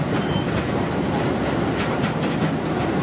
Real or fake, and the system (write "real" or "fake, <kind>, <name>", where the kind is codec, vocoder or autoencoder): real